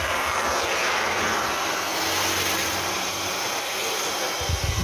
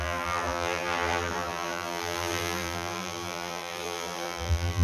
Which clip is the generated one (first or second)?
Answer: second